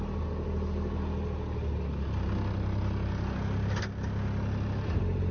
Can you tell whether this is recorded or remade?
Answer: recorded